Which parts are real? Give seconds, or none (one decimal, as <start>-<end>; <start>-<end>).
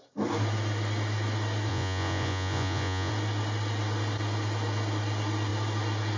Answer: 0.0-1.7; 3.1-6.2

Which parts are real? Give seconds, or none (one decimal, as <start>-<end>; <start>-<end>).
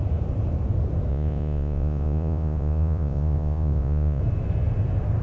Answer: 0.0-1.1; 4.2-5.2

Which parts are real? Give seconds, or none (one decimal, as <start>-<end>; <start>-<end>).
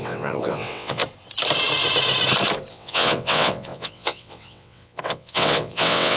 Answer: 1.0-2.7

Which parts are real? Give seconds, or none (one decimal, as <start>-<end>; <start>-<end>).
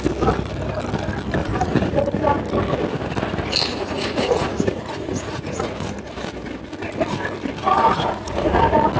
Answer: 0.0-1.4; 2.0-3.7; 5.7-7.6; 8.6-9.0